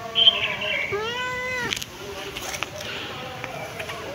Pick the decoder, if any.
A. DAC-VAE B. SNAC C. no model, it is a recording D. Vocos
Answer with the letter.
C